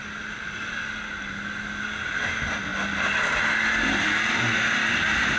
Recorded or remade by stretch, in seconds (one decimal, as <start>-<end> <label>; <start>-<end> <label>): 0.0-5.4 recorded